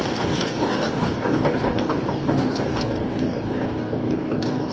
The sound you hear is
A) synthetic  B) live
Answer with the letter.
A